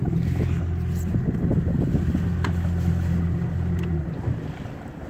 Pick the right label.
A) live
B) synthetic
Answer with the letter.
A